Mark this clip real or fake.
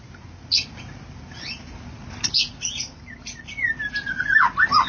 real